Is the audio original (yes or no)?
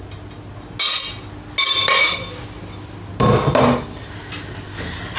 yes